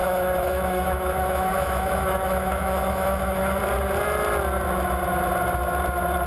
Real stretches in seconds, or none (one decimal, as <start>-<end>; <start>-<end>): 3.6-6.3